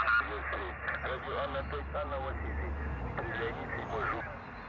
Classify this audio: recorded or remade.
recorded